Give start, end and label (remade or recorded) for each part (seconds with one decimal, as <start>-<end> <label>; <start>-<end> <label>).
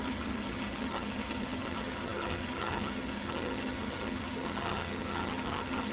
0.0-5.9 remade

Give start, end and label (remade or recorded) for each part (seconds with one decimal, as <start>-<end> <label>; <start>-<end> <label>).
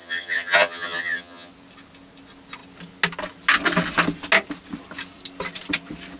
0.0-1.5 remade; 1.5-6.2 recorded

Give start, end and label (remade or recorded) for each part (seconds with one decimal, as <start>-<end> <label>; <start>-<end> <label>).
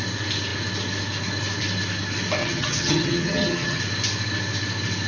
0.0-2.4 recorded; 2.4-3.8 remade; 3.8-5.1 recorded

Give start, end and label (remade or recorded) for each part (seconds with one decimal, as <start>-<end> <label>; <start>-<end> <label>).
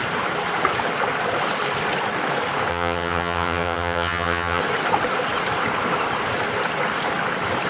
0.0-2.7 recorded; 2.7-4.6 remade; 4.6-7.7 recorded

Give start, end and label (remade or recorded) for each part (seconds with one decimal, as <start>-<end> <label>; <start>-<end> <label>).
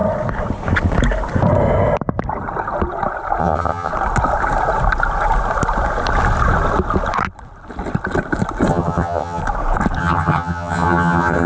0.0-3.4 recorded; 3.4-3.9 remade; 3.9-8.7 recorded; 8.7-9.4 remade; 9.4-10.0 recorded; 10.0-11.5 remade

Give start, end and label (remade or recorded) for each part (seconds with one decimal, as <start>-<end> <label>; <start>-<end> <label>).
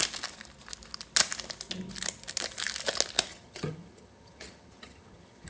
0.0-3.3 recorded; 3.3-5.5 remade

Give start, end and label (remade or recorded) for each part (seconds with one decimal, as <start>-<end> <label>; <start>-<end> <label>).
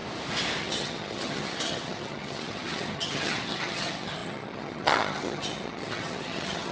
0.0-0.6 recorded; 0.6-6.7 remade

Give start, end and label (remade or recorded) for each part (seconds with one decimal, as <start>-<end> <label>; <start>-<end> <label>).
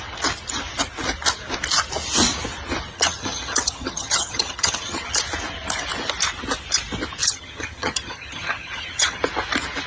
0.0-2.9 recorded; 2.9-5.2 remade; 5.2-7.2 recorded; 7.2-9.2 remade; 9.2-9.9 recorded